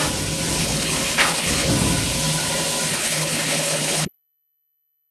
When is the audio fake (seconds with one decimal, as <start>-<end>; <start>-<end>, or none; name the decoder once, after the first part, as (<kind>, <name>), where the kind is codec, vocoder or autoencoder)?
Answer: 0.6-1.7 (codec, HILCodec); 2.9-5.1